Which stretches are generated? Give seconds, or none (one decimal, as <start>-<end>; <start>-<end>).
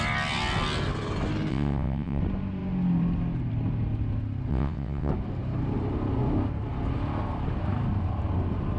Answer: 1.5-2.2; 4.5-5.1